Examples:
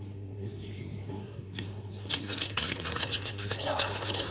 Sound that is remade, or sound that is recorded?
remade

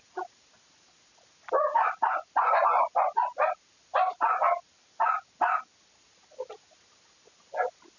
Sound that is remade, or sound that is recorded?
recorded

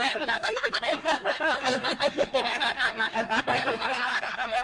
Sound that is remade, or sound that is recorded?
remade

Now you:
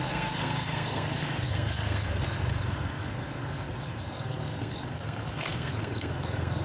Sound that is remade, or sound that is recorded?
remade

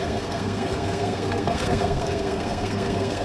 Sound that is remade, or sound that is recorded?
remade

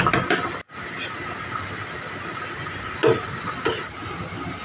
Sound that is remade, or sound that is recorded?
recorded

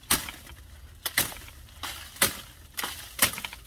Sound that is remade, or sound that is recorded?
recorded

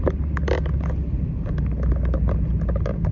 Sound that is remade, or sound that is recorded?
recorded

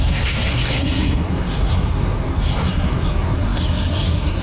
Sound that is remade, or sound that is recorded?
remade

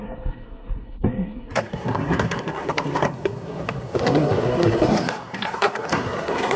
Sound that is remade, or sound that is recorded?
remade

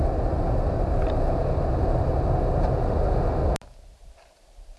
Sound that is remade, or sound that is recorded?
recorded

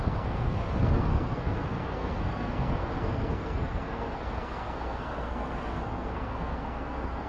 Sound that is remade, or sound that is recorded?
remade